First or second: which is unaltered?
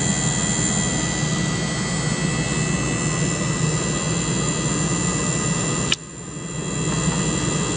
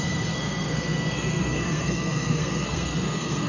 first